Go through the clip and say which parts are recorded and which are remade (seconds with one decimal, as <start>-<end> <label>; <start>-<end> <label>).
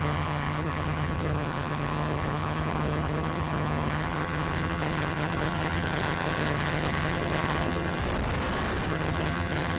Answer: 0.0-8.0 remade; 8.0-8.9 recorded; 8.9-9.8 remade